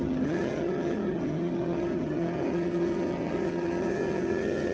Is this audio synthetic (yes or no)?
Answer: yes